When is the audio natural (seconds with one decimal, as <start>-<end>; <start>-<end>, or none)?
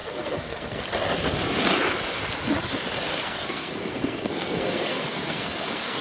0.8-3.1